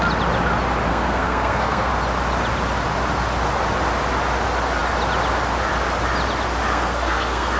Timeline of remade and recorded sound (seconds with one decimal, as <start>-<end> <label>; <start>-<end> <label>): 0.0-0.9 recorded; 0.9-1.9 remade; 1.9-6.7 recorded; 6.7-7.6 remade